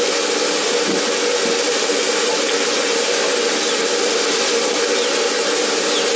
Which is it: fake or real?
real